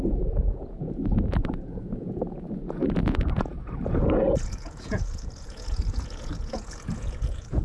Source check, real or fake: fake